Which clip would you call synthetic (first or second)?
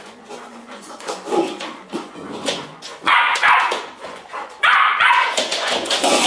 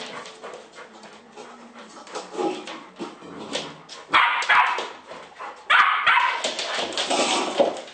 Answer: first